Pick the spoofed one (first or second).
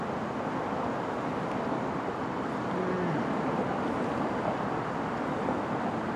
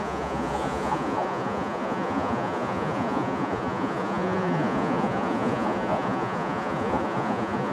second